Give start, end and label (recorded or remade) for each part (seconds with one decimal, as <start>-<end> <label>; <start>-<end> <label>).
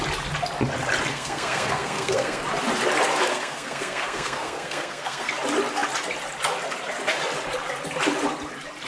0.0-1.1 recorded; 1.1-2.4 remade; 2.4-3.3 recorded; 3.3-5.3 remade; 5.3-8.9 recorded